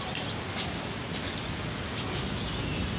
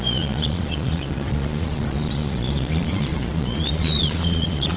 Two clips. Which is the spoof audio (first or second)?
second